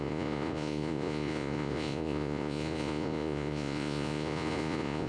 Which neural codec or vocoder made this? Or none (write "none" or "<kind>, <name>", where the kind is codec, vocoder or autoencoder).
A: vocoder, Vocos